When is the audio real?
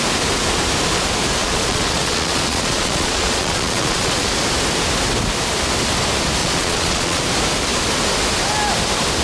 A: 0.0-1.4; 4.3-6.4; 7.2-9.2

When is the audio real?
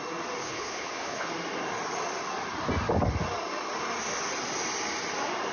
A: 0.0-0.4; 1.3-5.5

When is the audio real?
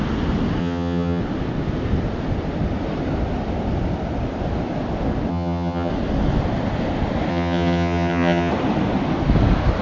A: 0.0-0.6; 1.2-5.3; 5.9-7.3; 8.5-9.8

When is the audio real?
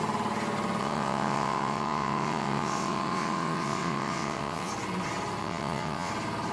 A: 0.0-0.8; 4.7-5.4; 6.1-6.5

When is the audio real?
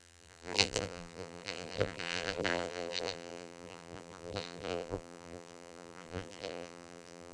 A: none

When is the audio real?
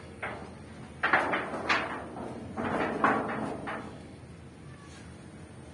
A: 0.4-3.8; 4.2-5.7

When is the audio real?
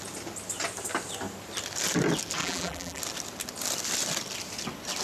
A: 0.0-2.4; 3.0-5.0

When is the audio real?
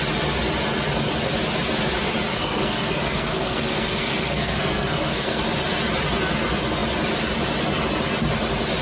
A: 0.0-2.3; 5.4-8.8